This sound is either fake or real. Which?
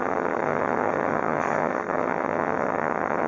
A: fake